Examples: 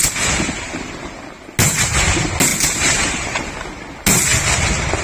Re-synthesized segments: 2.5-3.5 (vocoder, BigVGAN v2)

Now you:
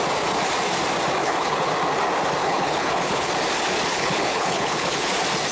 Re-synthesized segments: 1.2-1.7 (codec, HILCodec); 2.4-3.3; 3.9-5.1

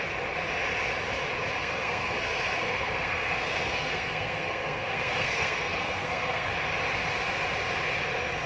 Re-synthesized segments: 1.6-6.5 (codec, SNAC)

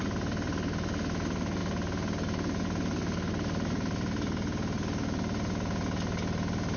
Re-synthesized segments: none